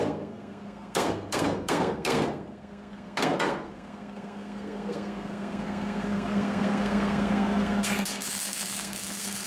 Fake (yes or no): yes